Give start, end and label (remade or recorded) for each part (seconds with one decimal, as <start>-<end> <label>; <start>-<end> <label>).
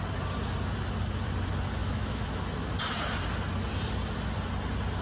0.0-1.8 recorded; 1.8-2.3 remade; 2.3-5.0 recorded